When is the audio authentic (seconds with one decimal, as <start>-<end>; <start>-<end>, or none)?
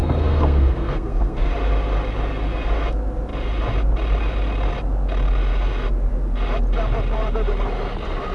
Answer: 1.5-8.3